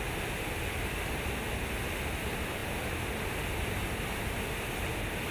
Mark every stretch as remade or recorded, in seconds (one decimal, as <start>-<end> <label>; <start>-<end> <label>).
0.0-5.3 recorded